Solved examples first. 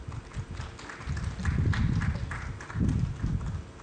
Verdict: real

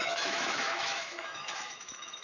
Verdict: fake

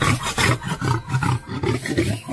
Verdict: real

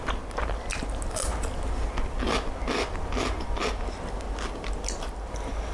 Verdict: real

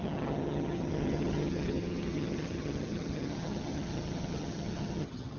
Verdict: fake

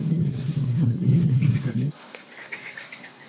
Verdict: fake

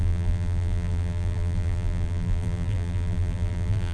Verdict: fake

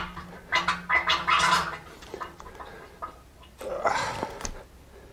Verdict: real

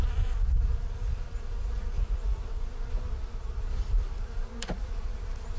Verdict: fake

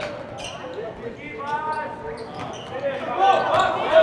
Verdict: real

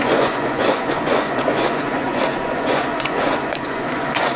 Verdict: fake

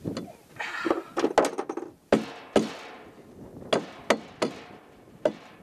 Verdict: real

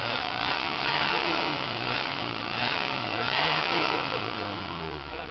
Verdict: fake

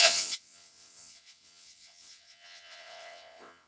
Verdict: fake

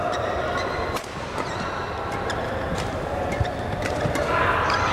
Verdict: fake